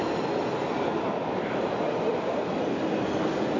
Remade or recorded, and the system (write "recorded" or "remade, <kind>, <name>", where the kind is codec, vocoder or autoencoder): recorded